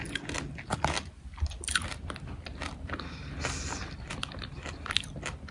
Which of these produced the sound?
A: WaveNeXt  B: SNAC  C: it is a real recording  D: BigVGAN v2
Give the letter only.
D